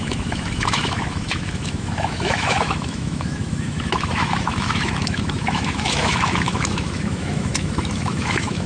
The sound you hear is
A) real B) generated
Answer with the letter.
B